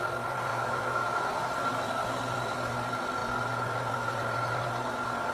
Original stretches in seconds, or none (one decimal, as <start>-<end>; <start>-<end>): 0.0-0.5; 1.3-5.3